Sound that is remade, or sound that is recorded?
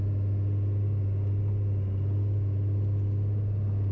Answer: recorded